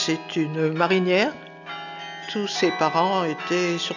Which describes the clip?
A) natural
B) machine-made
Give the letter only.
A